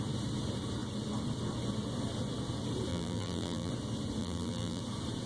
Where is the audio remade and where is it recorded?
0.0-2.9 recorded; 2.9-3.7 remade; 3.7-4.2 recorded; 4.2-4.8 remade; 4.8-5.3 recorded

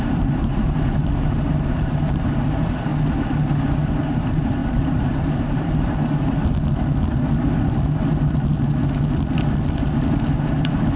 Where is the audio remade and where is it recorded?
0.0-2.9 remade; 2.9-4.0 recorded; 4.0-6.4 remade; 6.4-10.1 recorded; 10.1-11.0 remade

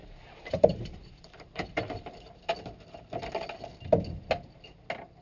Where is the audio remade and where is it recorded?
0.0-2.5 remade; 2.5-5.2 recorded